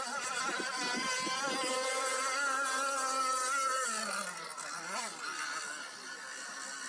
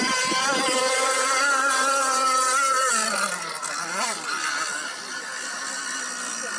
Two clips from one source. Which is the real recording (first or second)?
first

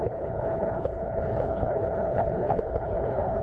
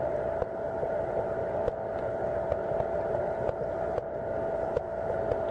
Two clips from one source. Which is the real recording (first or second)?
second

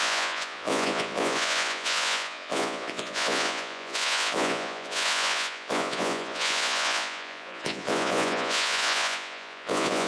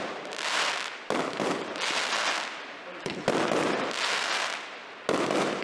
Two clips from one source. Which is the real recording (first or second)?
second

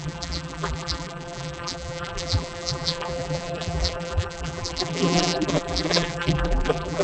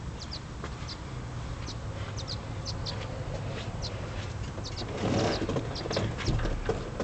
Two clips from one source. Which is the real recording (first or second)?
second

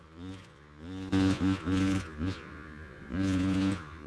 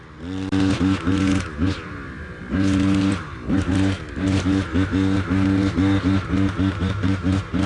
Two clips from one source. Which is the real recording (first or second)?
second